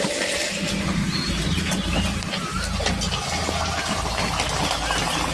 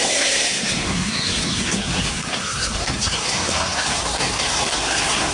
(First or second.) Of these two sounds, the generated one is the second